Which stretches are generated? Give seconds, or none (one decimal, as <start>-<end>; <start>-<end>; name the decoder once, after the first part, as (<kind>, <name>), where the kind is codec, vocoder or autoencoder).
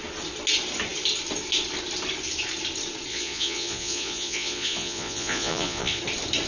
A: 3.1-6.0 (vocoder, Vocos)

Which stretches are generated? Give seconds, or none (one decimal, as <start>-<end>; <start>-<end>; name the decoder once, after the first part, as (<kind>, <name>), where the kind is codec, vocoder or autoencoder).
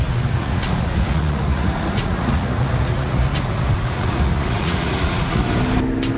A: 0.0-5.4 (vocoder, Vocos)